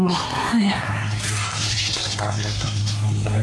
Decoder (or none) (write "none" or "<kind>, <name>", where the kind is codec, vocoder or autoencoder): codec, SNAC